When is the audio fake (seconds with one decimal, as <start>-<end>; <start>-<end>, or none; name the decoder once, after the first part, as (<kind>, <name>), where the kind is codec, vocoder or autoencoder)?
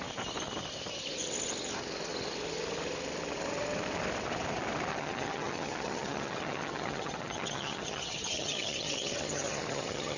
4.9-10.2 (vocoder, HiFi-GAN)